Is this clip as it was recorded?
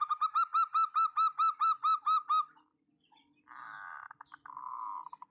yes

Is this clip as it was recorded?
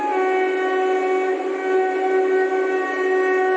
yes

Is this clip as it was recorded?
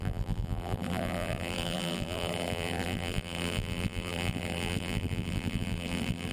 no